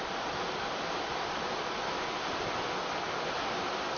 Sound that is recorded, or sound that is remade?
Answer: recorded